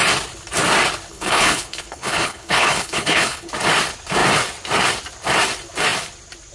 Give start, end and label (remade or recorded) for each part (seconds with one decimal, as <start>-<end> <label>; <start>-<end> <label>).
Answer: 0.0-1.1 recorded; 1.1-3.5 remade; 3.5-6.5 recorded